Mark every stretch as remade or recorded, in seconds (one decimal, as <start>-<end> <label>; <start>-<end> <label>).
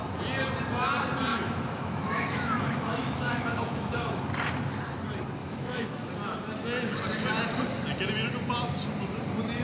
0.0-1.3 recorded; 1.3-4.2 remade; 4.2-5.4 recorded; 5.4-6.1 remade; 6.1-9.6 recorded